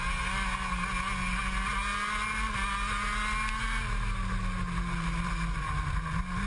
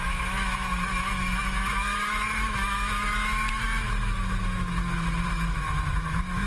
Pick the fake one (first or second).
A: second